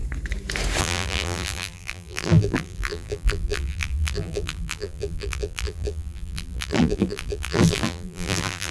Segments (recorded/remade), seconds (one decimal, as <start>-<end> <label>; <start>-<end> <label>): 0.0-0.8 recorded; 0.8-8.7 remade